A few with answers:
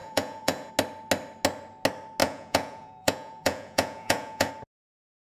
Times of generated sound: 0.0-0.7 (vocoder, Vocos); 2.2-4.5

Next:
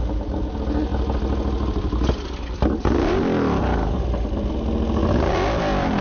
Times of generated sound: none

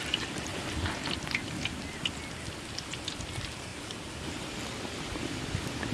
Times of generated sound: none

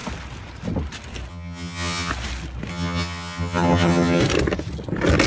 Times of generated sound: 1.3-2.1 (vocoder, HiFi-GAN); 2.7-4.2

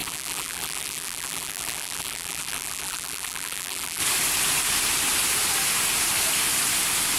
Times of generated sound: 0.0-4.0 (vocoder, BigVGAN v2)

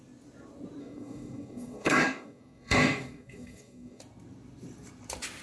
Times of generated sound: 0.8-4.0 (codec, DAC)

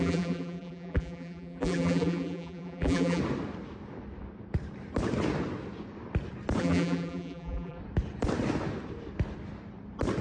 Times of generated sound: 0.0-3.2 (vocoder, BigVGAN v2); 6.6-7.8

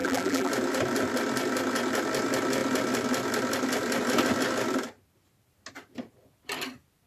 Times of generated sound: 0.0-0.5 (vocoder, BigVGAN v2)